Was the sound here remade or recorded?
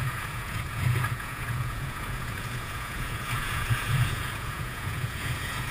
remade